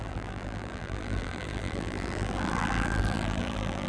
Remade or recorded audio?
remade